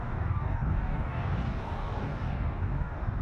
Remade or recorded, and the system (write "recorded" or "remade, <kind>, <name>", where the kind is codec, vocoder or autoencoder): remade, codec, DAC